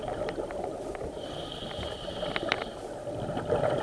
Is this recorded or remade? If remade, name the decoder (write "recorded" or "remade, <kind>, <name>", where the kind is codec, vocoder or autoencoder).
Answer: recorded